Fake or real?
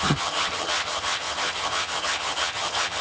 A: fake